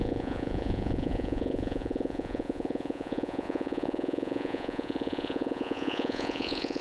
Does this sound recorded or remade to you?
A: remade